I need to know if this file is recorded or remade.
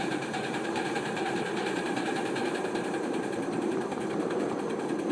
remade